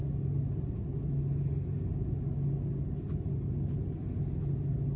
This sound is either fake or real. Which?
real